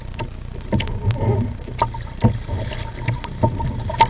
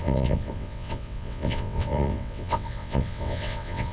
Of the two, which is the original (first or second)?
first